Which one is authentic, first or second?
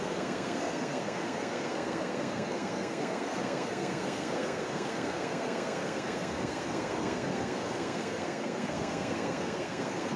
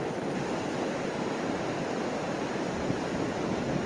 second